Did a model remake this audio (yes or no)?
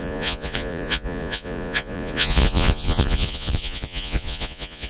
yes